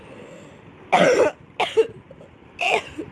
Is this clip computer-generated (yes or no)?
no